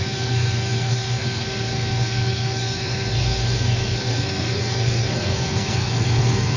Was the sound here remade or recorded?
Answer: remade